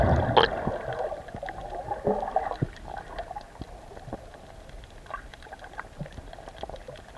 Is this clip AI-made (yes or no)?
no